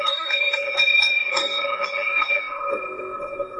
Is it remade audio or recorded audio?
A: remade